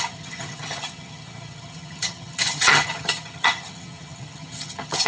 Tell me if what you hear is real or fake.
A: fake